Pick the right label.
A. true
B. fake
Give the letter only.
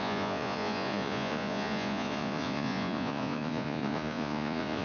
B